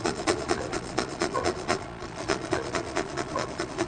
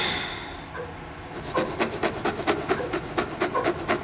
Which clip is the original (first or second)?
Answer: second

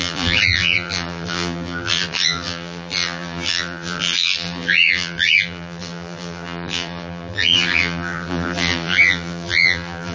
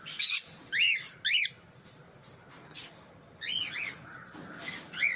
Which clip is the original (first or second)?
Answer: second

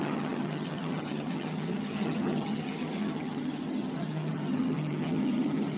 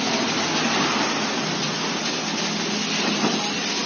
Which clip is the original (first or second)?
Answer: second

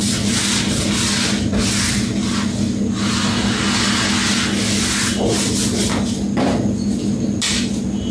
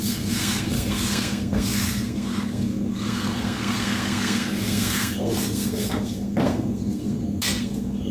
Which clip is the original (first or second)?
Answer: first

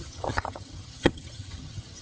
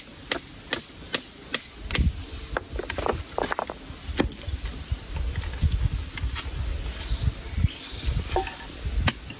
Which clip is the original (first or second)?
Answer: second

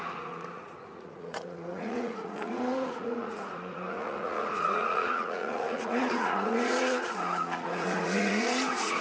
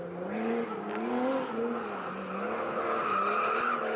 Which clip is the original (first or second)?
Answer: second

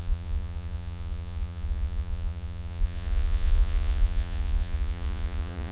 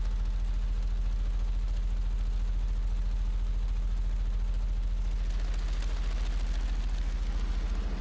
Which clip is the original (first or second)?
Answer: second